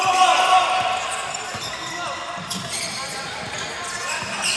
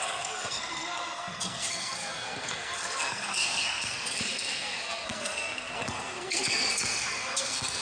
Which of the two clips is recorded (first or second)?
first